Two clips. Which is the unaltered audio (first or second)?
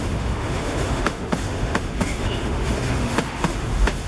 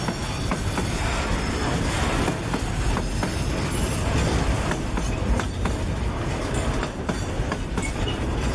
second